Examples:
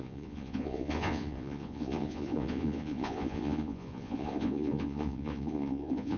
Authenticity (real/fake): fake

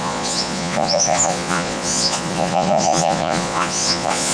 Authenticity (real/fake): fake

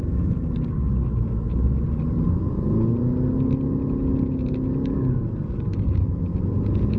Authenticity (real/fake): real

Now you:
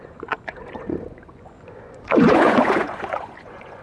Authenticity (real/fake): fake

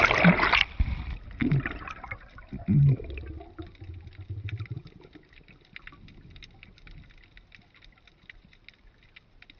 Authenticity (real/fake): real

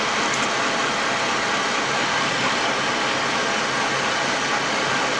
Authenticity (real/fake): real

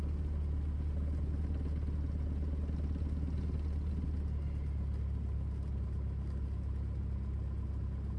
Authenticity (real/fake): real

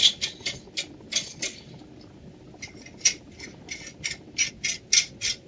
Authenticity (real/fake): real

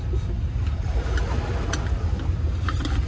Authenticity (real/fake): real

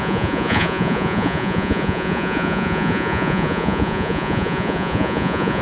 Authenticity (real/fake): fake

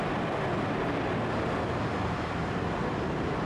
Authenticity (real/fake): real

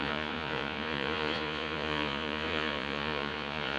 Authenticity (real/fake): fake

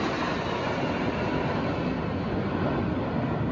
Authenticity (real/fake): real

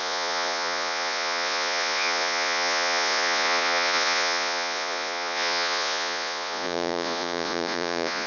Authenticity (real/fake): fake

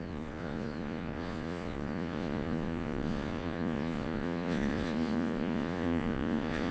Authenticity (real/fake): fake